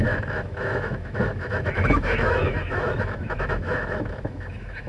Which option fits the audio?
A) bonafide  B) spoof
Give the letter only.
B